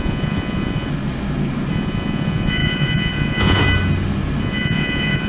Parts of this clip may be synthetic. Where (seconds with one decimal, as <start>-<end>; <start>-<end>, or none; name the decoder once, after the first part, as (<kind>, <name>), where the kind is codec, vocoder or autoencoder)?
0.0-0.9 (vocoder, Vocos); 1.7-3.6; 4.4-5.3